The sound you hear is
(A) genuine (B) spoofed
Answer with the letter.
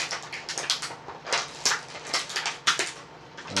A